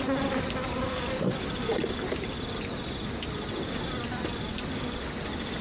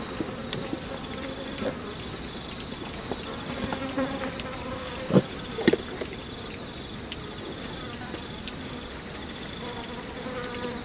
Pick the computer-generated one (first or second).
second